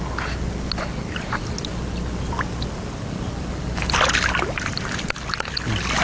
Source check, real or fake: fake